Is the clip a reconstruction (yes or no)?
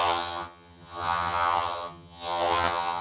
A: yes